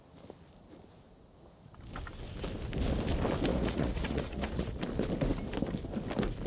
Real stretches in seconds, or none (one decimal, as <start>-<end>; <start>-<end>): 0.0-3.5; 4.8-6.5